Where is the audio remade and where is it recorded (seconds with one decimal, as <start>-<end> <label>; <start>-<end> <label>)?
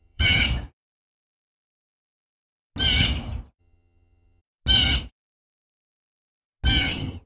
0.0-0.4 remade; 0.4-3.6 recorded; 3.6-4.4 remade; 4.4-6.8 recorded; 6.8-7.3 remade